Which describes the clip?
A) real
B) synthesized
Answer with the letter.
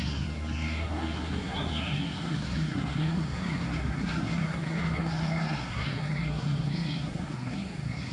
B